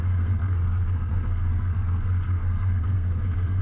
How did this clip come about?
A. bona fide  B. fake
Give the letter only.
B